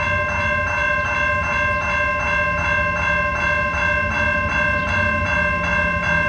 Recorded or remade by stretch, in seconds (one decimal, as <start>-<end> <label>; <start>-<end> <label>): 0.0-6.3 recorded